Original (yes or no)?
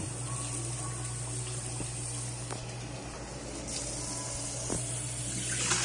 yes